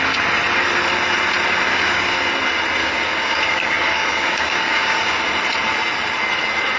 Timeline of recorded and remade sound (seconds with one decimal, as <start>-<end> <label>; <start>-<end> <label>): 0.0-1.7 recorded; 1.7-2.2 remade; 2.2-2.8 recorded; 2.8-5.2 remade; 5.2-6.8 recorded